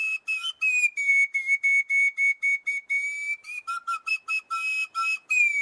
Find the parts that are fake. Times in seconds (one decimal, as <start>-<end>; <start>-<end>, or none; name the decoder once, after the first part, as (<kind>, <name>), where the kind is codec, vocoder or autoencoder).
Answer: none